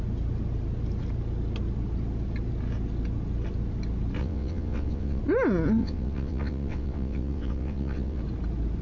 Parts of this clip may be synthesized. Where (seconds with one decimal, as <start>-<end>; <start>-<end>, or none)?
4.2-5.2; 5.8-8.2